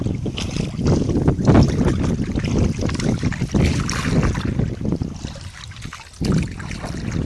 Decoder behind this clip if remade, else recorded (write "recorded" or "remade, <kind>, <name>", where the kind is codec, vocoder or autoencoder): recorded